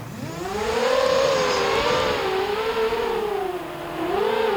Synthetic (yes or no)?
yes